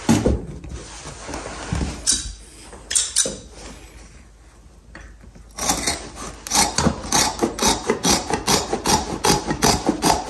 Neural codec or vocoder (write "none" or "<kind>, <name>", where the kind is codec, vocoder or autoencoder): none